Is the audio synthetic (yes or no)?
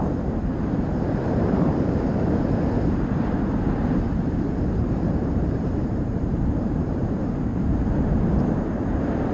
yes